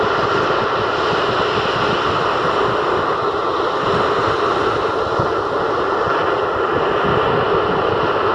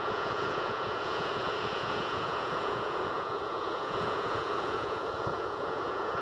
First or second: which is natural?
first